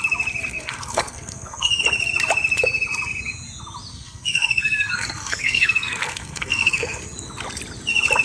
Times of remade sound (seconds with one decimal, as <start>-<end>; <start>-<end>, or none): 0.5-1.8; 3.9-7.0